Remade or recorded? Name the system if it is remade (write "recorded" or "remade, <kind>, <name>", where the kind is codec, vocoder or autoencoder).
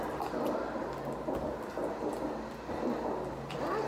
recorded